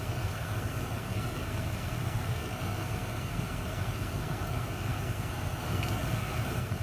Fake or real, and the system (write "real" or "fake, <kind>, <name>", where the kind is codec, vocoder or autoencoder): fake, codec, SNAC